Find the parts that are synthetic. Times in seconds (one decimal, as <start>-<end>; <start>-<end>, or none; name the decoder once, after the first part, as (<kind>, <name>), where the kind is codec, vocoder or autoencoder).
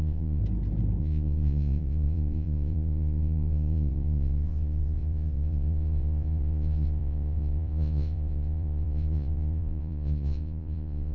0.0-0.4 (vocoder, Vocos); 1.0-11.1